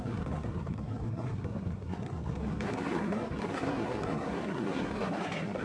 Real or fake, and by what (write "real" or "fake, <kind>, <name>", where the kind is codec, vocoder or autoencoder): fake, codec, SNAC